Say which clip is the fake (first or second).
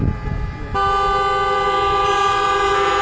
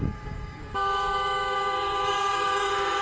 second